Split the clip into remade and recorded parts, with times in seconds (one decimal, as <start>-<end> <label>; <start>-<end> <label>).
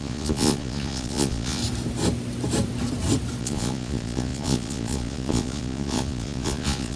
0.0-1.6 remade; 1.6-3.4 recorded; 3.4-7.0 remade